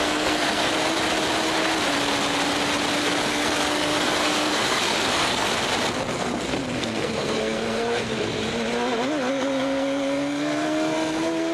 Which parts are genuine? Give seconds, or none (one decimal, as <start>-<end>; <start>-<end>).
0.7-3.3; 5.5-6.1; 8.4-9.3